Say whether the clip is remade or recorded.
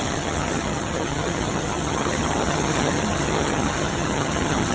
remade